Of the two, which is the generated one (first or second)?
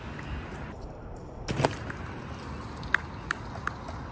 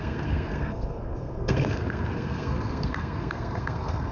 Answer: second